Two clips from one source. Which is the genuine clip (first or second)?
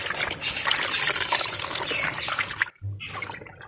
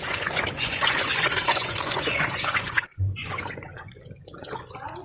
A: first